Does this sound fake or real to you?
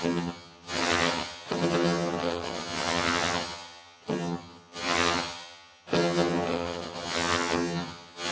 fake